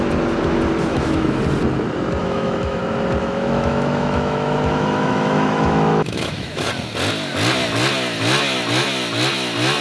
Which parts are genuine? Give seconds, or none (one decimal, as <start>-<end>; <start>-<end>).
0.0-0.9; 1.4-2.2; 2.8-3.2; 6.7-9.8